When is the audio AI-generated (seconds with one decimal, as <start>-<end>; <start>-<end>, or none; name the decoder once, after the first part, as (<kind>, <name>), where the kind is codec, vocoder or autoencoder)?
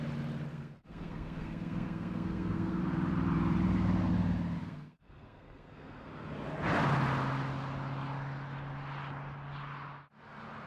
0.5-2.8 (codec, SNAC); 4.6-6.1